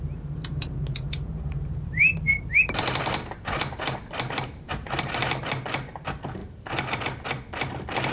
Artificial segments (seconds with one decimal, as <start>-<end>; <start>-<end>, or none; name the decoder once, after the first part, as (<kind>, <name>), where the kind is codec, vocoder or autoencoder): 0.5-5.4 (vocoder, BigVGAN v2); 6.4-7.0